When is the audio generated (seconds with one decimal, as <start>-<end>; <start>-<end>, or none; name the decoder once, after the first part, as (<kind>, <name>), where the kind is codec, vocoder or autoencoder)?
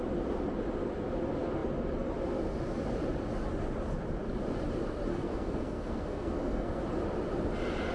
5.1-6.8 (codec, SNAC)